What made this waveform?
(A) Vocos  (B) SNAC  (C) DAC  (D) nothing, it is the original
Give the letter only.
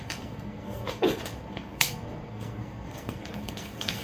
B